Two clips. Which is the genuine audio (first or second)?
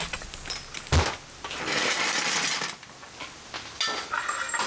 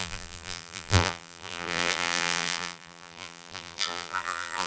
first